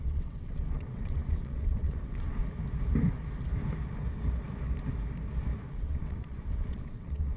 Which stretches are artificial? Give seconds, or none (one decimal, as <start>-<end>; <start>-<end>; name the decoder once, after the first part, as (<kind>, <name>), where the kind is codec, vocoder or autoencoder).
0.0-2.4 (vocoder, WaveNeXt); 5.7-7.4